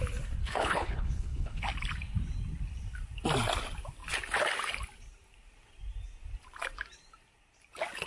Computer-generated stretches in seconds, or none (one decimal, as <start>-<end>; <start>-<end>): 0.4-1.6